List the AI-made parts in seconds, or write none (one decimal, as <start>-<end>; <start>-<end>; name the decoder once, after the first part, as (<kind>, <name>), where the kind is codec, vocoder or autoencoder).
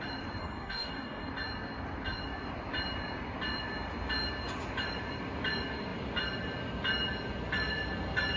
0.4-1.3 (codec, DAC)